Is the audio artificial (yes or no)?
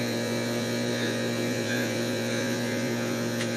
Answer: yes